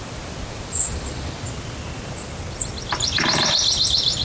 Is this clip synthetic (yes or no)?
no